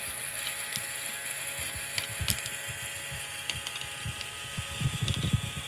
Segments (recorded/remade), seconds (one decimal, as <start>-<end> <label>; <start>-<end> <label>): 0.0-5.7 recorded